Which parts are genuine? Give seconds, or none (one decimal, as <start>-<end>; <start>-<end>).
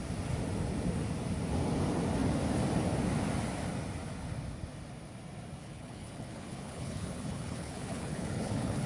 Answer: 0.0-5.6